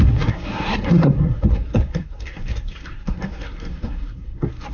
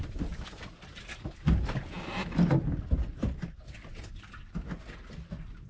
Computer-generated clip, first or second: first